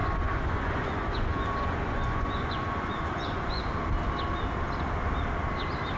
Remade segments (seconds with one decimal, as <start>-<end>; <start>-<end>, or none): 0.0-3.6